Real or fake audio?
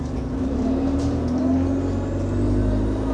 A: real